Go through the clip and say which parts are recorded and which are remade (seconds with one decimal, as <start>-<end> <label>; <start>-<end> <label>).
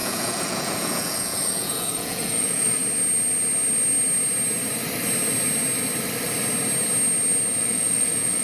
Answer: 0.0-2.8 remade; 2.8-7.6 recorded; 7.6-8.4 remade